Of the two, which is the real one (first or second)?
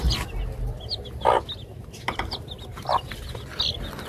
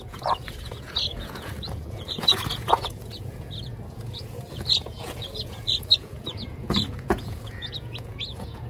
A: first